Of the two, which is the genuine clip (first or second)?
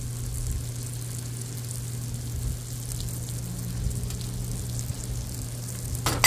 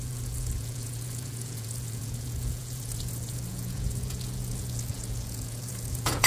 first